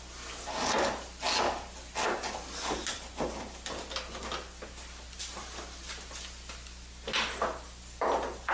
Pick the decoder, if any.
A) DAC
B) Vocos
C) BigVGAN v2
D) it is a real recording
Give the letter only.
D